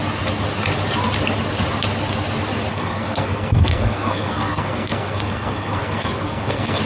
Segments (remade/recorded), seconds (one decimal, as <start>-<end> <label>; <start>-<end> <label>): 0.0-2.7 recorded; 2.7-6.8 remade